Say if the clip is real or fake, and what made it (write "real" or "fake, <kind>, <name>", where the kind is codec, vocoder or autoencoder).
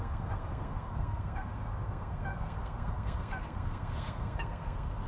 fake, codec, SNAC